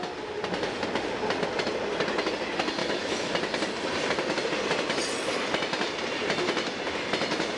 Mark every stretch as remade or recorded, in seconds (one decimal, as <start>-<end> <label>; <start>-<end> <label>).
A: 0.0-2.8 recorded; 2.8-3.3 remade; 3.3-7.6 recorded

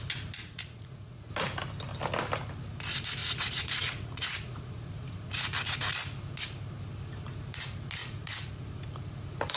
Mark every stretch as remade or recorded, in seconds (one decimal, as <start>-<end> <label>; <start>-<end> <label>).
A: 0.0-0.4 recorded; 0.4-1.3 remade; 1.3-3.2 recorded; 3.2-5.4 remade; 5.4-8.0 recorded; 8.0-8.6 remade; 8.6-9.6 recorded

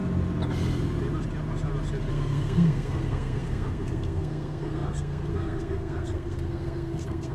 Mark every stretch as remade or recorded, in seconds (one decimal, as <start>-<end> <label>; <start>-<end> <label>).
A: 0.0-2.1 recorded; 2.1-7.3 remade

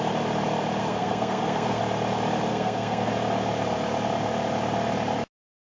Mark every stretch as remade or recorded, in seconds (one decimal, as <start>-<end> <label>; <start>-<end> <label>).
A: 0.0-0.8 recorded; 0.8-1.8 remade; 1.8-2.5 recorded; 2.5-3.1 remade; 3.1-5.6 recorded

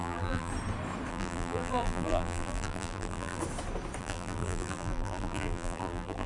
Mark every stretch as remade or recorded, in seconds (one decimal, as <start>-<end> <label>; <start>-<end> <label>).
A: 0.0-0.5 remade; 0.5-1.1 recorded; 1.1-3.4 remade; 3.4-4.0 recorded; 4.0-6.3 remade